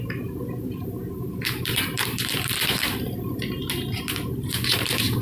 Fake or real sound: fake